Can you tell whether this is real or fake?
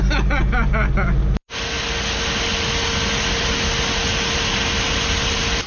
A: real